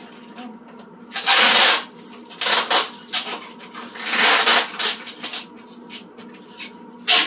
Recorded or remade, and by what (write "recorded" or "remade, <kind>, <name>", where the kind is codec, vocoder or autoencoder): recorded